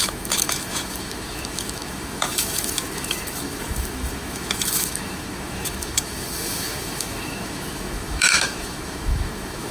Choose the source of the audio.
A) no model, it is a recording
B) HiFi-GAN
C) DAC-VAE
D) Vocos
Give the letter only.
C